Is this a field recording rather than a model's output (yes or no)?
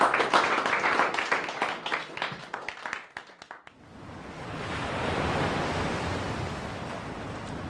yes